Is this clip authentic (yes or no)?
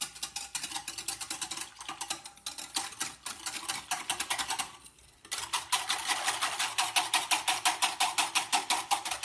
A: yes